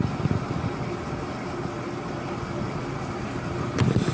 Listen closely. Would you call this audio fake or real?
real